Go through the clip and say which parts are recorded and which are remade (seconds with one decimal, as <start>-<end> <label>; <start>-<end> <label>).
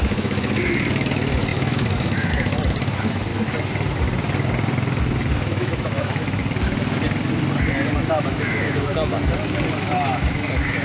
0.0-3.3 remade; 3.3-5.3 recorded; 5.3-6.4 remade; 6.4-8.0 recorded; 8.0-8.9 remade; 8.9-9.7 recorded; 9.7-10.8 remade